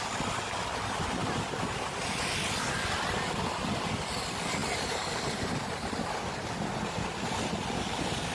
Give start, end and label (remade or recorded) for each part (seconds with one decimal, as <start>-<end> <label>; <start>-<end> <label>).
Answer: 0.0-4.6 recorded; 4.6-6.1 remade; 6.1-8.3 recorded